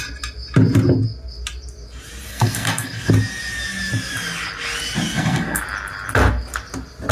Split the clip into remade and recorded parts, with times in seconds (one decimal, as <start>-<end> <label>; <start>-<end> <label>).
0.0-2.3 recorded; 2.3-3.1 remade; 3.1-5.1 recorded; 5.1-5.6 remade; 5.6-7.1 recorded